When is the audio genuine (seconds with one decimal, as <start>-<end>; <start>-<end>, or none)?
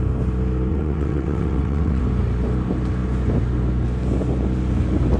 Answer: 0.0-0.7; 2.0-5.2